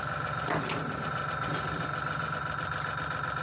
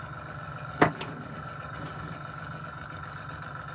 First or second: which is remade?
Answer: second